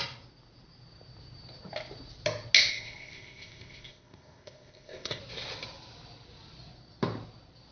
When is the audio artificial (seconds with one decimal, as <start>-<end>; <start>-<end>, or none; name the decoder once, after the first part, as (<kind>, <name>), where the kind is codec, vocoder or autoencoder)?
2.7-5.2 (codec, ZipCodec)